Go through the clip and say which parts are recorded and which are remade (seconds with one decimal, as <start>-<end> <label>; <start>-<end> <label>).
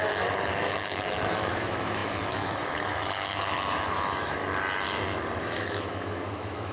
0.0-4.4 remade; 4.4-5.4 recorded; 5.4-6.7 remade